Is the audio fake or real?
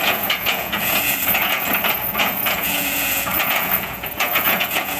fake